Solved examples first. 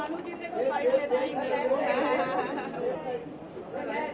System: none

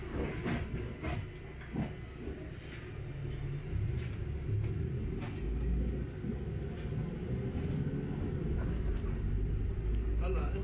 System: none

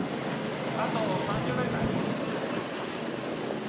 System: none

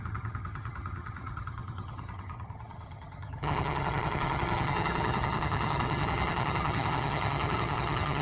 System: vocoder, HiFi-GAN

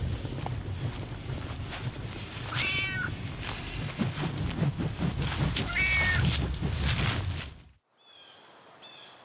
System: none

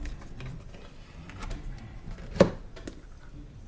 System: none